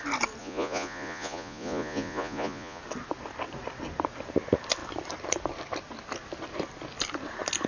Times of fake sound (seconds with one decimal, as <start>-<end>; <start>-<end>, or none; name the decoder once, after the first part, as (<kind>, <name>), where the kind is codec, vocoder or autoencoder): 0.4-2.8 (vocoder, Vocos)